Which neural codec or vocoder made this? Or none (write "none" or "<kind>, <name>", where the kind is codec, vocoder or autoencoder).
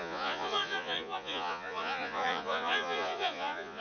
vocoder, Vocos